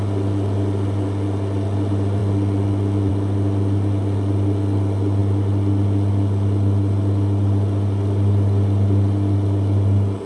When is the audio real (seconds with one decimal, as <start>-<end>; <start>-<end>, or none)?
0.0-10.3